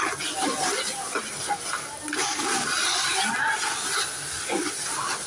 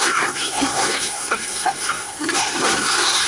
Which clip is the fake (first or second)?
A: second